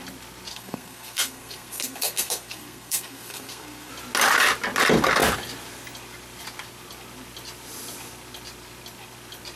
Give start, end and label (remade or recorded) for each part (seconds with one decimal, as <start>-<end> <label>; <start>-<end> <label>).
0.0-0.5 recorded; 0.5-3.9 remade; 3.9-9.6 recorded